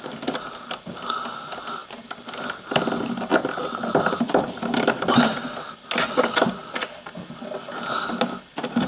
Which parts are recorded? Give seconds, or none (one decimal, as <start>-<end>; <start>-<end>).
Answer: 0.0-8.9